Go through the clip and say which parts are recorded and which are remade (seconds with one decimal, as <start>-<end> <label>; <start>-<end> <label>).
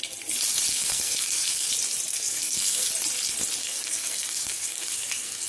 0.0-0.7 recorded; 0.7-1.7 remade; 1.7-2.1 recorded; 2.1-2.9 remade; 2.9-3.6 recorded; 3.6-5.5 remade